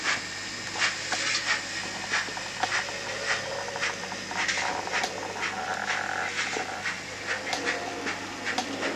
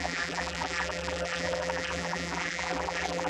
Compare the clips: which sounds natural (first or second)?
first